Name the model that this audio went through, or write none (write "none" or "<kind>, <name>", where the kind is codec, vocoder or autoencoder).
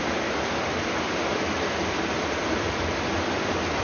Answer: none